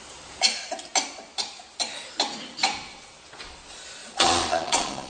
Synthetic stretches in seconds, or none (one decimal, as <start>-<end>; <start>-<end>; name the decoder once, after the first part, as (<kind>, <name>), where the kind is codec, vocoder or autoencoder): 4.0-5.1 (vocoder, Vocos)